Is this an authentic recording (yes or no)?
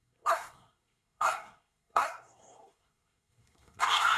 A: no